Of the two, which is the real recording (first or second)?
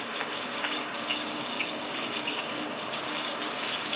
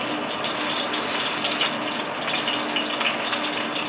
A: second